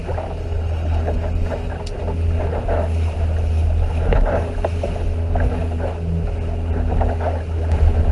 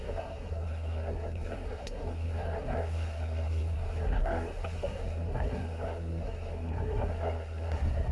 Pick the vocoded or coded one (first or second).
second